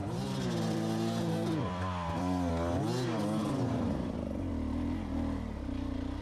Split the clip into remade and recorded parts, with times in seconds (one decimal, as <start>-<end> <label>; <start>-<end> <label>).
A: 0.0-2.5 remade; 2.5-3.4 recorded; 3.4-4.5 remade; 4.5-6.2 recorded